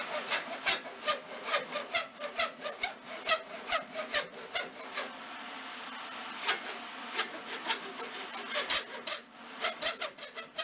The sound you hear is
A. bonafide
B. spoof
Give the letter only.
A